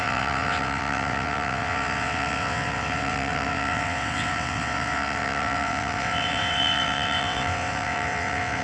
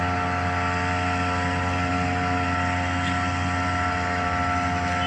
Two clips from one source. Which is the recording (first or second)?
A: second